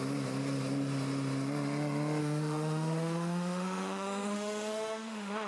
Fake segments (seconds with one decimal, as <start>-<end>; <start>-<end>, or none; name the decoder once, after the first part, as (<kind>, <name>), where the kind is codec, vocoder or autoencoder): 2.2-5.5 (autoencoder, DAC-VAE)